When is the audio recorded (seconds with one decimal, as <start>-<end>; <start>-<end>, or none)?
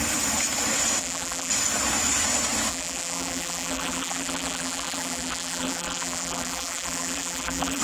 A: 0.0-1.0; 1.5-2.7